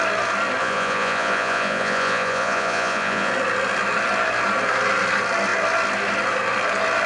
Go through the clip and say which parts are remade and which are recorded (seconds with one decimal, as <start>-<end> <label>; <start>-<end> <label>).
0.0-0.6 recorded; 0.6-3.3 remade; 3.3-7.1 recorded